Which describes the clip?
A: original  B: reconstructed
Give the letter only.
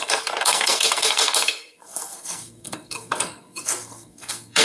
B